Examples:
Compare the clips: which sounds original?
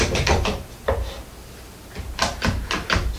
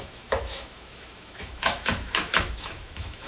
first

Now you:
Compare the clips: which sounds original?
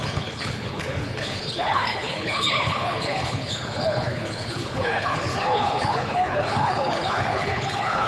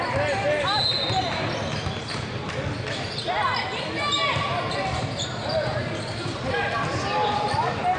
second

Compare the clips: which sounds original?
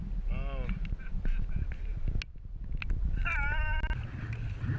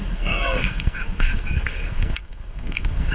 first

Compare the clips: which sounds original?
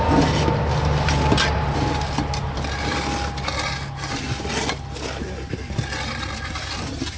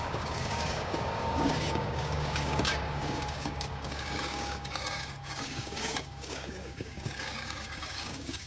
first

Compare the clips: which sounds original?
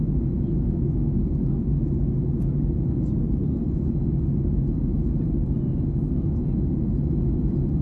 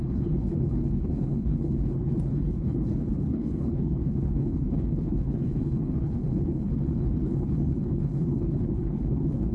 first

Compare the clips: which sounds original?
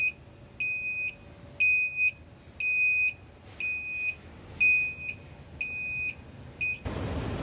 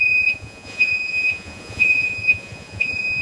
first